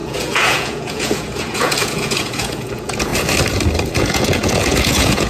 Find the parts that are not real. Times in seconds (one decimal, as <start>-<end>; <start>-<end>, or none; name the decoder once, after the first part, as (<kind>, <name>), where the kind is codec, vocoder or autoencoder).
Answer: 0.0-3.1 (vocoder, Vocos); 3.9-5.3